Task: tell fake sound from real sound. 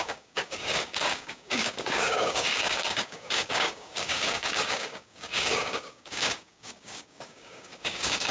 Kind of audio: fake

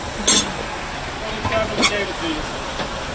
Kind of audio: real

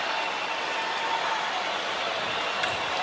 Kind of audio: real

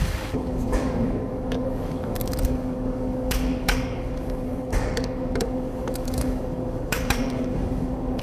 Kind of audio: fake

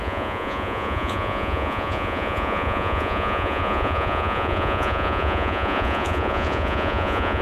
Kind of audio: fake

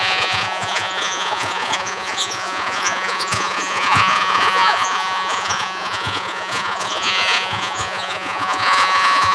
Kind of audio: fake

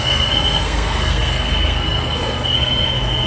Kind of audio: fake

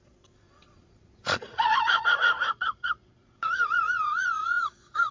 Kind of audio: fake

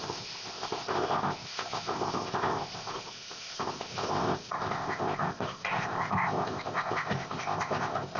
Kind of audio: fake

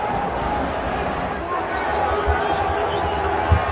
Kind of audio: real